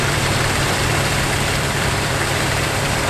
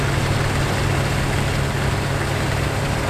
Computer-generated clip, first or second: first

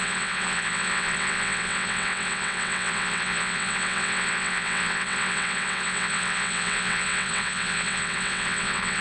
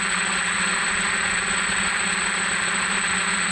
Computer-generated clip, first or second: first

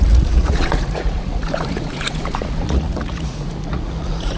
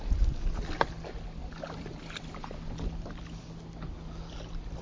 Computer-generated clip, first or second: first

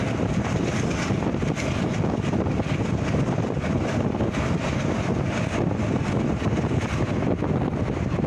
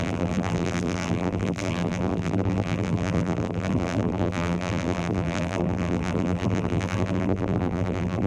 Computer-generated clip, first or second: second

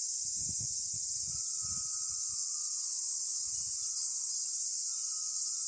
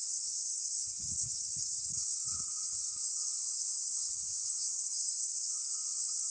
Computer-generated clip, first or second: second